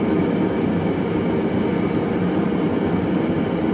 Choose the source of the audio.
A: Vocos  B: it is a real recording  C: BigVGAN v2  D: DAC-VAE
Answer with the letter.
B